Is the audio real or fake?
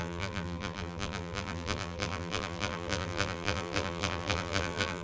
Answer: fake